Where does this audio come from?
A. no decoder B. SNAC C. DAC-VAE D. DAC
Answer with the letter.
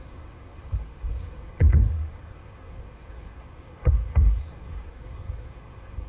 B